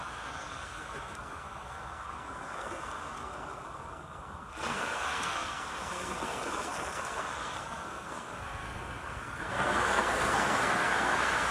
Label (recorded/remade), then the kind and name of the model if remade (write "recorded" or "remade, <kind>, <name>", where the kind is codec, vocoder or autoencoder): remade, codec, SNAC